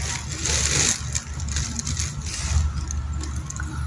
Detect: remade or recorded recorded